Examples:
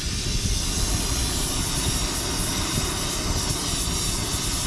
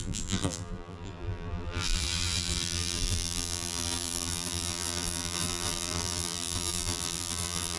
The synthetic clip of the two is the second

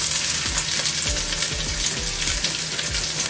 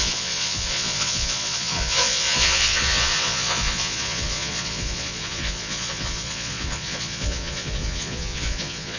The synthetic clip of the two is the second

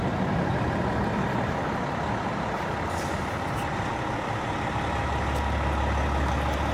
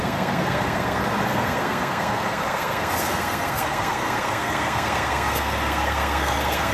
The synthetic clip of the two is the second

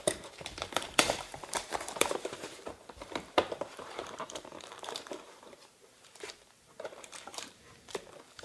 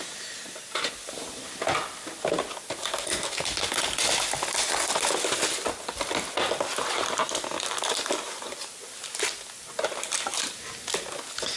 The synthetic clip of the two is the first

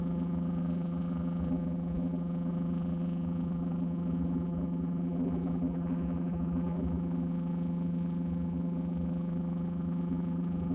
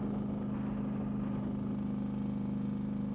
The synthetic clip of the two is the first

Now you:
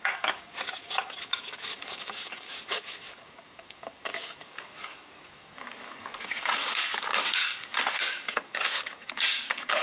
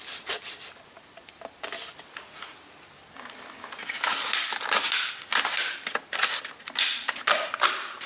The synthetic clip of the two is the first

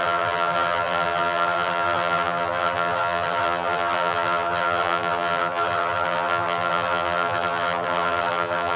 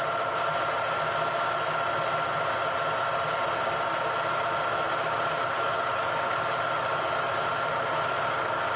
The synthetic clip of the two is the first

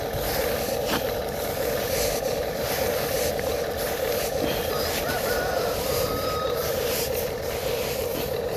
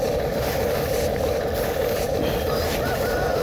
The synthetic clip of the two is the first